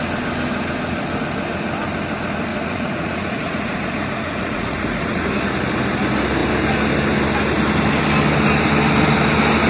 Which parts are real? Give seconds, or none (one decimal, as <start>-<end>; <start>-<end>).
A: 0.0-2.5; 5.3-9.7